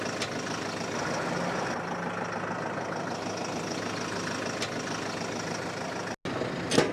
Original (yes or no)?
yes